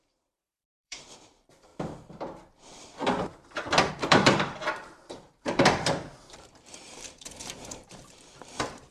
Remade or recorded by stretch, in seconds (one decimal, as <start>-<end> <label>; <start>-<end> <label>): 0.0-1.7 remade; 1.7-3.9 recorded; 3.9-8.9 remade